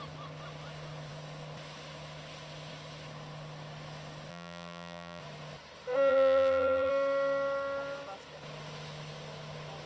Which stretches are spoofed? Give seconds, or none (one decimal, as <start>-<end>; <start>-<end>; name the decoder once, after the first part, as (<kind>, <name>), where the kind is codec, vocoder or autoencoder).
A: 4.3-5.2 (vocoder, BigVGAN v2); 6.1-6.9